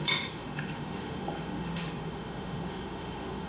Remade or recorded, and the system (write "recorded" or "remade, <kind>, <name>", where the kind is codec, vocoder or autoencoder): remade, autoencoder, DAC-VAE